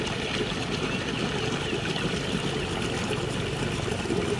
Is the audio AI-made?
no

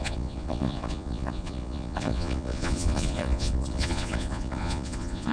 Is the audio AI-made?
yes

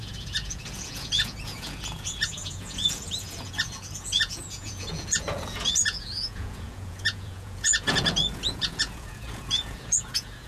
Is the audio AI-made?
yes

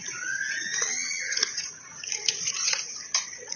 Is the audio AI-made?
yes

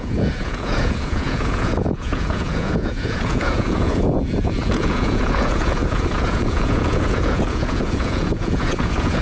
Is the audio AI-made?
yes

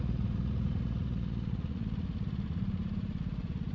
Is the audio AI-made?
yes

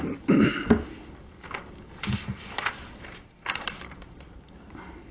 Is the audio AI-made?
no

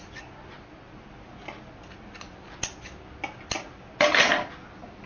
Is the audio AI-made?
no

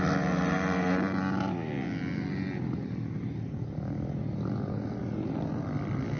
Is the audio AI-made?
no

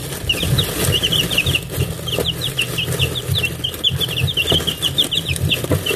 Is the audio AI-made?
no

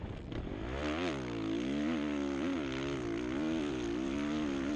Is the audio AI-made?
no